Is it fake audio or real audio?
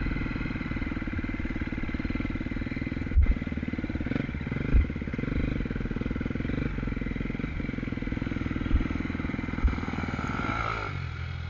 real